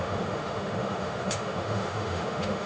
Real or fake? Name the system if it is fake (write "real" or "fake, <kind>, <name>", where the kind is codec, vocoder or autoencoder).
fake, autoencoder, DAC-VAE